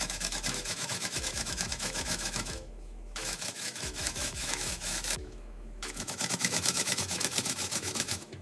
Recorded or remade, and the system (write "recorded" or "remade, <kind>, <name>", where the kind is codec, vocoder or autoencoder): remade, autoencoder, DAC-VAE